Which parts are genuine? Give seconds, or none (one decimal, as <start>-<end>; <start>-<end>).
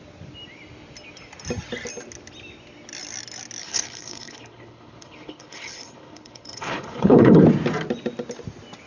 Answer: 0.0-3.6; 7.4-8.9